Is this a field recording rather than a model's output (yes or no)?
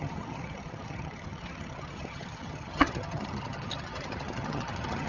no